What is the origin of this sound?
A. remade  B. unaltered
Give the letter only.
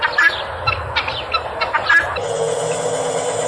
B